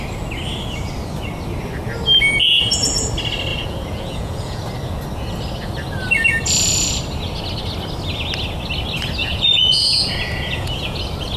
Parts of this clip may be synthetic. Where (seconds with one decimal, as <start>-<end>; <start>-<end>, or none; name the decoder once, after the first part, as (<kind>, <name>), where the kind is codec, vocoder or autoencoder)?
3.5-4.6 (vocoder, Vocos); 9.2-11.0